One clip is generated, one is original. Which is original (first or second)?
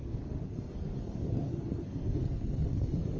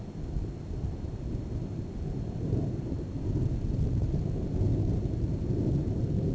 second